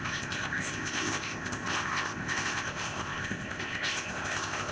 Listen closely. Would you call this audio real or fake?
fake